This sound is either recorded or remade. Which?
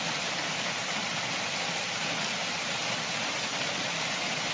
recorded